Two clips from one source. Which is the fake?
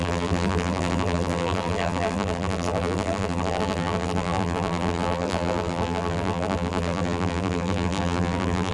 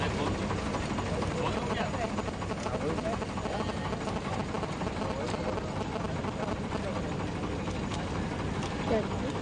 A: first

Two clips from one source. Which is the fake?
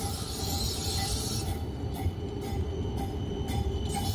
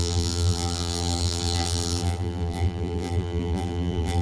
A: second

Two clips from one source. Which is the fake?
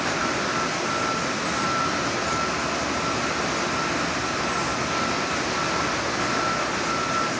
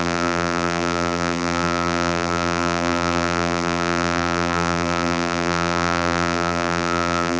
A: second